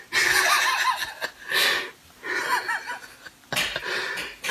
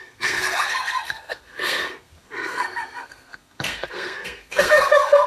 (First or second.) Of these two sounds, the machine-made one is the second